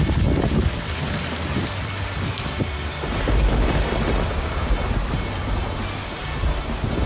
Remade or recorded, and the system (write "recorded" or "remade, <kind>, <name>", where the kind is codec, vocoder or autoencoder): recorded